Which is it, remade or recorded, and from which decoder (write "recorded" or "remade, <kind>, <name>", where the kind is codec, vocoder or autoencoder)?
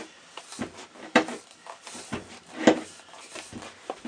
recorded